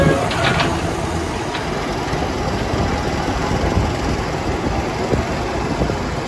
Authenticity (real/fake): real